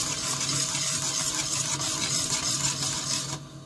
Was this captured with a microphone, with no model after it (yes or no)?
yes